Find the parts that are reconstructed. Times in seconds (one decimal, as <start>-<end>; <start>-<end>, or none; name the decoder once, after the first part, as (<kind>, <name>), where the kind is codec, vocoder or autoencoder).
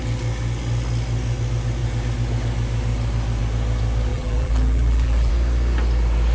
4.1-5.3 (vocoder, BigVGAN v2)